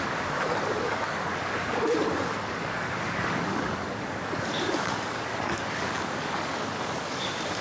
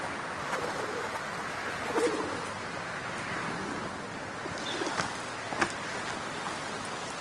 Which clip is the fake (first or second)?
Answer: first